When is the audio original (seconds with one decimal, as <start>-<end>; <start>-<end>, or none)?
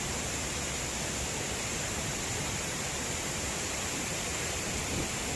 0.0-1.7; 4.9-5.4